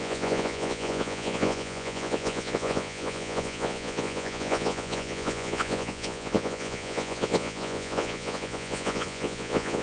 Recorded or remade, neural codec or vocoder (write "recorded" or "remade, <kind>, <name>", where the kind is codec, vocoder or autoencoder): remade, vocoder, Vocos